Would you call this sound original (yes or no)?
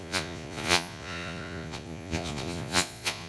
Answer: no